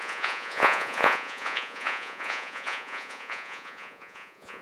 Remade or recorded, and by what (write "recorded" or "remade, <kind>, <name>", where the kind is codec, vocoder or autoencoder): remade, vocoder, Vocos